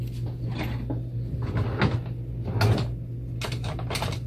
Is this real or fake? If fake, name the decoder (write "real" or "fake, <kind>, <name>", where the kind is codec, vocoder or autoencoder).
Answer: real